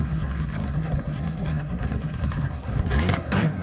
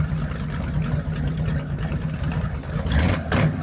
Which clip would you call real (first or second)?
second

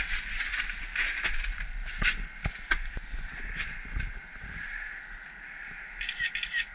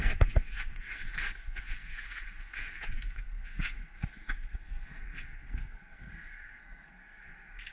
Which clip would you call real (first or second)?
first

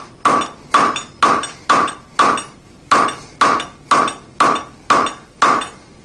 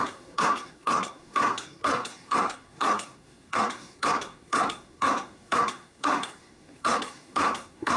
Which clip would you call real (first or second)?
first